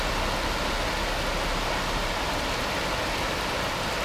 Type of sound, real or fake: real